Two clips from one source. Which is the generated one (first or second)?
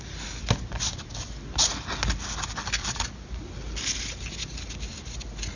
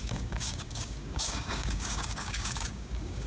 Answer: second